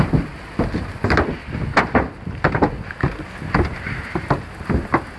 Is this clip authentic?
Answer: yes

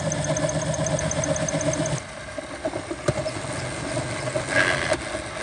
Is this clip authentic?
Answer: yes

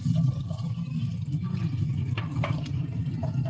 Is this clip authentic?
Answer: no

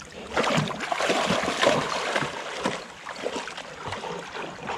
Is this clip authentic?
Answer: yes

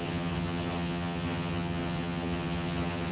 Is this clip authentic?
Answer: no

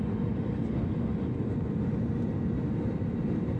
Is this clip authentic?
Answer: yes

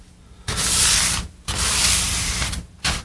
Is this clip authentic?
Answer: yes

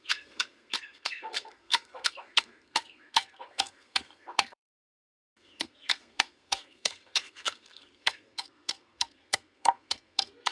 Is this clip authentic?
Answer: no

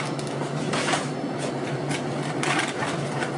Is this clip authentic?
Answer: yes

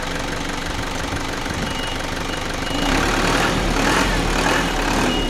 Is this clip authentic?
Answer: no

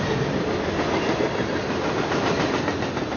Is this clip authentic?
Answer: yes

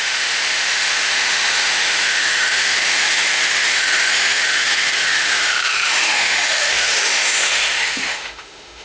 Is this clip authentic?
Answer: no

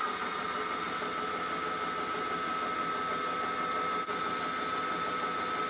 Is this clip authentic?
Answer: yes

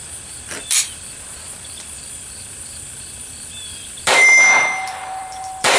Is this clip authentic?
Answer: no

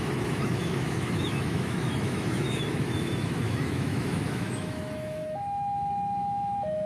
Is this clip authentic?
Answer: no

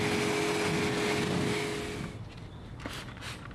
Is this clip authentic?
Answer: yes